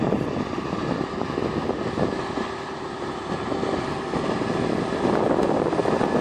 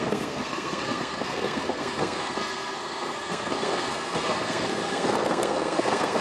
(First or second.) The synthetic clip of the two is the second